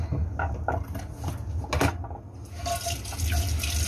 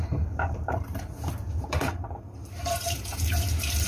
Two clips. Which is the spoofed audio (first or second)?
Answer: second